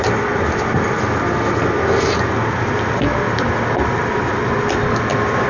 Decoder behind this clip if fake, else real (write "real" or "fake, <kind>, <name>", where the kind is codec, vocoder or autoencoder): real